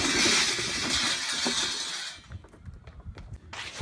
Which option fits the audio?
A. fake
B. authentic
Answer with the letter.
B